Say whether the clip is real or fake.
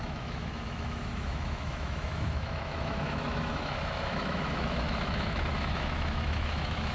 fake